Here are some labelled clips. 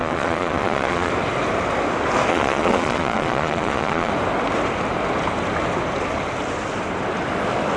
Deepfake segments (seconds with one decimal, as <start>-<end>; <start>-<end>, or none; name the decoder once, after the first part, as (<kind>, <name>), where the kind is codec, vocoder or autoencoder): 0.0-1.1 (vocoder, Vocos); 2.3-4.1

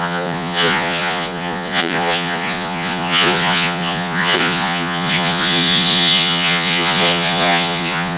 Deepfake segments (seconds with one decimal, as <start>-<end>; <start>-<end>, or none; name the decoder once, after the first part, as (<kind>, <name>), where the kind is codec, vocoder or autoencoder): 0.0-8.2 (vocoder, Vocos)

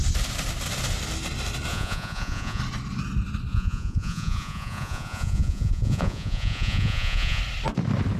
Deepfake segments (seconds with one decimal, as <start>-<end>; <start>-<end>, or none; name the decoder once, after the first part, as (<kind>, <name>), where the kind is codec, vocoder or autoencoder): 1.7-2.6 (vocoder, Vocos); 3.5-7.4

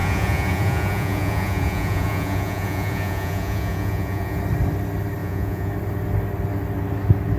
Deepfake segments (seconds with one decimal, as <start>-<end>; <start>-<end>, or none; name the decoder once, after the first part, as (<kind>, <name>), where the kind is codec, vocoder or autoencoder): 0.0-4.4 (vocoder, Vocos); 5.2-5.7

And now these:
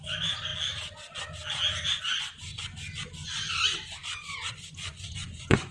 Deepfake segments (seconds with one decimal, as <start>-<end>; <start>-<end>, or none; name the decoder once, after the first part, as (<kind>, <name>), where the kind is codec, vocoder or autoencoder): 0.0-0.5 (vocoder, Vocos); 2.0-2.5; 4.5-5.7

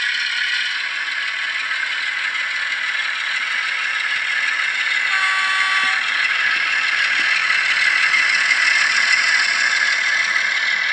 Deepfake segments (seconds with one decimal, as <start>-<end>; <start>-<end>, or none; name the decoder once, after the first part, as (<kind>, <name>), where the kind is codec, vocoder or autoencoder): none

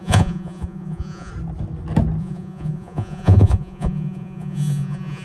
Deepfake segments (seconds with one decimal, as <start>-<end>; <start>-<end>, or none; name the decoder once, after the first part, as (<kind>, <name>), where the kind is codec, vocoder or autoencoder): 0.0-1.3 (vocoder, Vocos); 2.2-5.2

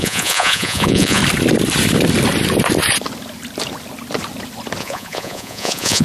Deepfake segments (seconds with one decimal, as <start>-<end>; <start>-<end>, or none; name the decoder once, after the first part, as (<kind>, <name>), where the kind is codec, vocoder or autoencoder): 0.0-1.2 (vocoder, Vocos); 4.8-6.0